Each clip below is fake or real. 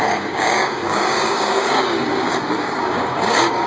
fake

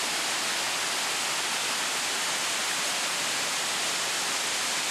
real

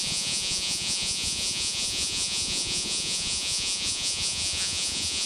fake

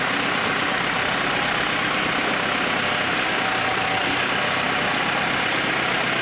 real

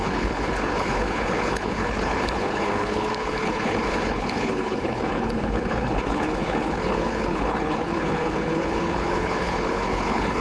fake